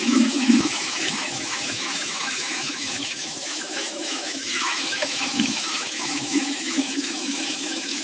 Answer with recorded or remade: remade